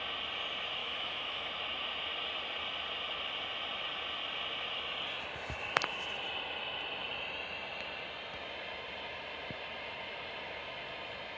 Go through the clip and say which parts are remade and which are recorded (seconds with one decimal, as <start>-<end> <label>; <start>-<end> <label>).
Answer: 0.0-0.8 recorded; 0.8-1.5 remade; 1.5-11.4 recorded